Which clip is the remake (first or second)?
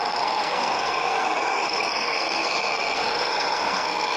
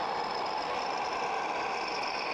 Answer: first